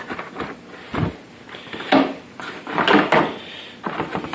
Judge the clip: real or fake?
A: real